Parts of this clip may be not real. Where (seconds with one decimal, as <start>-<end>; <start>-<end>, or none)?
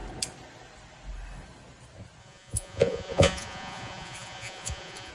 2.2-5.1